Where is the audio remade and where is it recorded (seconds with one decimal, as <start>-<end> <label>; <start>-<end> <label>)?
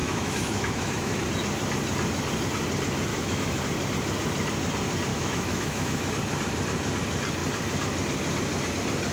0.0-1.2 remade; 1.2-3.1 recorded; 3.1-3.6 remade; 3.6-5.1 recorded; 5.1-6.1 remade; 6.1-9.1 recorded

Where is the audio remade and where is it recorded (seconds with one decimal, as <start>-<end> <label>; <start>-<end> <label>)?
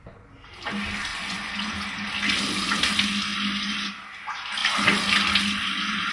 0.0-1.1 recorded; 1.1-1.7 remade; 1.7-6.1 recorded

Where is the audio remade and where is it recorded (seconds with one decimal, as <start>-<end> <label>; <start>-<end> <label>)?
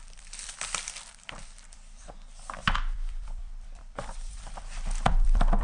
0.0-5.6 remade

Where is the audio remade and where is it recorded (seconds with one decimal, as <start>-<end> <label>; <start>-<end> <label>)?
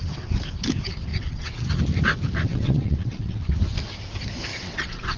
0.0-1.1 recorded; 1.1-1.6 remade; 1.6-2.4 recorded; 2.4-3.6 remade; 3.6-4.5 recorded; 4.5-5.2 remade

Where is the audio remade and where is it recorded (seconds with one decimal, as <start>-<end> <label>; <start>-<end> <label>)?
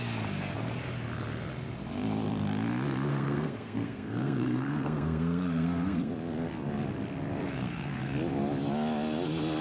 0.0-3.1 recorded; 3.1-6.1 remade; 6.1-7.4 recorded; 7.4-8.1 remade; 8.1-9.6 recorded